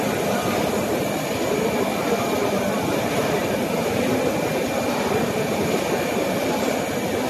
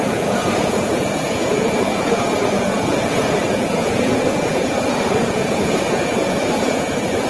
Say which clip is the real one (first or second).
first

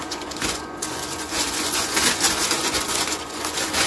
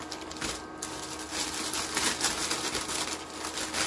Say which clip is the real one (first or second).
second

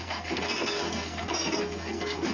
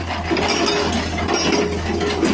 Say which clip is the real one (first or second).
second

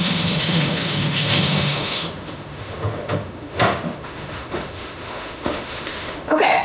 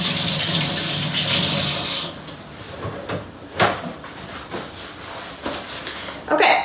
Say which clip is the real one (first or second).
second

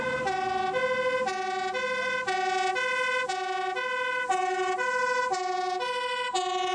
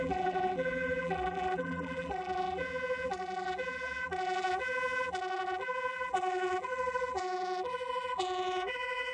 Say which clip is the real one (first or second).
first